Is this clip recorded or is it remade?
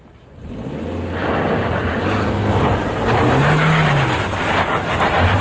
recorded